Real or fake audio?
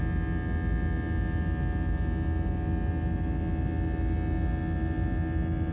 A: real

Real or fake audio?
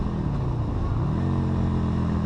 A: real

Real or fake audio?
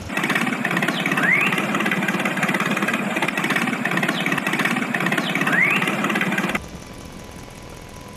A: real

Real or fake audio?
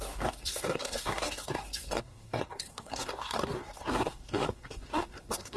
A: fake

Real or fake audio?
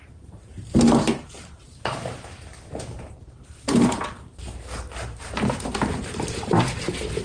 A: fake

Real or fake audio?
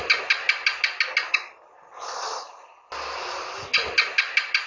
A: real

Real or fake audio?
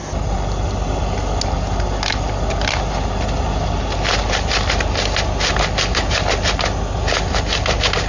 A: real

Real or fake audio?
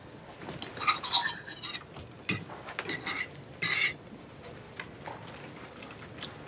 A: real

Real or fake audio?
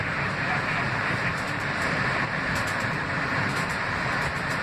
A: fake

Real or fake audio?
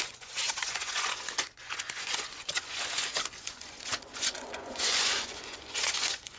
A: fake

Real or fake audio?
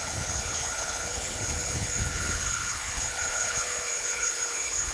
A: fake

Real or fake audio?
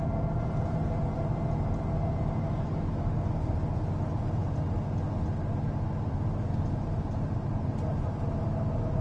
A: real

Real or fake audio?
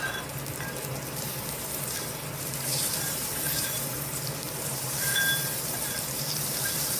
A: fake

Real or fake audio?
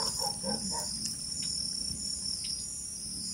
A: real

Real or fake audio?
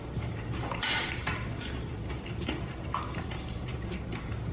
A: fake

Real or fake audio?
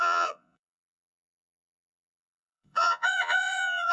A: fake